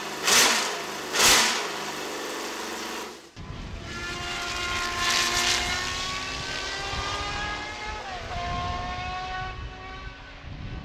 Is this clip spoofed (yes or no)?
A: no